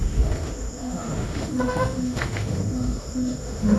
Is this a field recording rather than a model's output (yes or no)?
no